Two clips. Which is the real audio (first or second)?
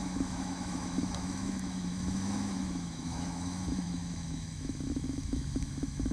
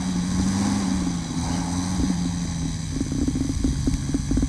second